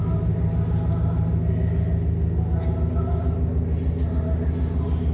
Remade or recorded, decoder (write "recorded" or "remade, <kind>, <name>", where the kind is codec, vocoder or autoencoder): recorded